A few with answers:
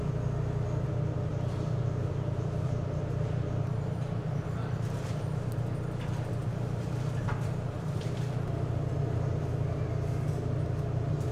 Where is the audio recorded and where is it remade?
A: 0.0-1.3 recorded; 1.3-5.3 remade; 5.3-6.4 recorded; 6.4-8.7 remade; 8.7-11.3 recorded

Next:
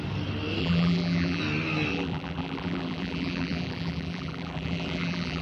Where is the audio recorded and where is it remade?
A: 0.0-0.6 recorded; 0.6-1.4 remade; 1.4-1.9 recorded; 1.9-5.4 remade

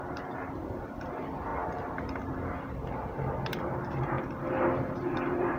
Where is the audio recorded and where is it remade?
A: 0.0-5.6 remade

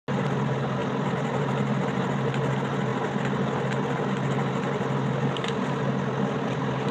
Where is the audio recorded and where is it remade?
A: 0.0-6.9 recorded

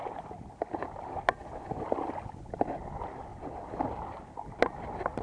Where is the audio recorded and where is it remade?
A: 0.0-5.2 recorded

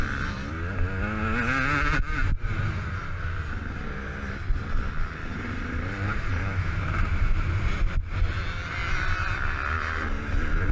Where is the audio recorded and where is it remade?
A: 0.0-5.3 recorded; 5.3-7.3 remade; 7.3-10.7 recorded

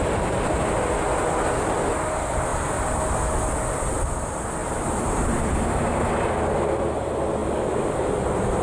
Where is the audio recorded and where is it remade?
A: 0.0-4.6 recorded; 4.6-5.3 remade; 5.3-7.4 recorded; 7.4-8.1 remade; 8.1-8.6 recorded